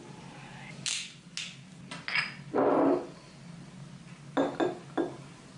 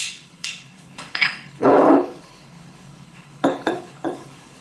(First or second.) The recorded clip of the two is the first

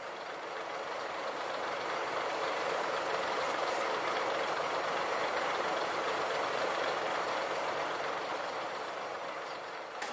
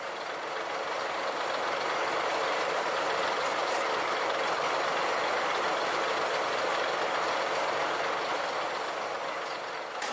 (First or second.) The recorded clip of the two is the second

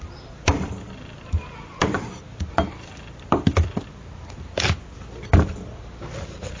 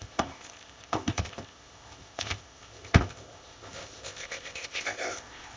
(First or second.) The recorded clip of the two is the first